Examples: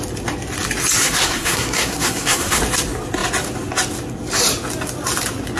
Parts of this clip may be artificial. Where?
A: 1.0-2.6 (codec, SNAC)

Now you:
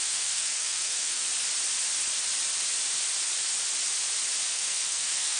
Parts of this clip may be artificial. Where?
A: 0.0-1.3 (codec, SNAC); 4.5-5.4

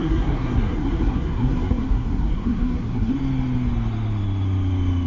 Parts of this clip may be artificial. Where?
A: 0.0-3.1 (codec, SNAC)

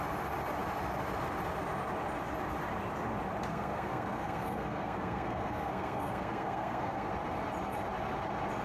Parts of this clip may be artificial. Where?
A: 3.5-7.1 (codec, SNAC)